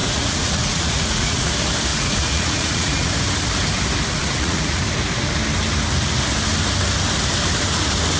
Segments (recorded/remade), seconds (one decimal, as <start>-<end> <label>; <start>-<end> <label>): 0.0-1.5 remade; 1.5-1.9 recorded; 1.9-3.1 remade; 3.1-4.2 recorded; 4.2-4.8 remade; 4.8-8.2 recorded